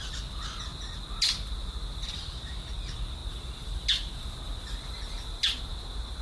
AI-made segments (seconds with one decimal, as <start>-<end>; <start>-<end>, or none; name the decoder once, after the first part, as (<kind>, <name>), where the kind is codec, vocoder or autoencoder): none